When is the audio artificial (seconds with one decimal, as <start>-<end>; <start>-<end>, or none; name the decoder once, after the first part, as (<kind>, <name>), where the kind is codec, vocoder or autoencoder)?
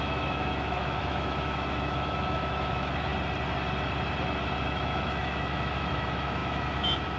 0.0-3.1 (autoencoder, DAC-VAE); 4.6-7.2